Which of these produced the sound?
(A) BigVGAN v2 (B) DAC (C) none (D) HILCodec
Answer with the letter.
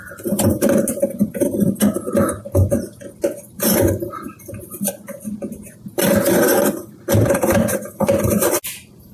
C